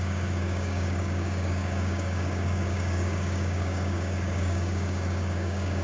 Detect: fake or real fake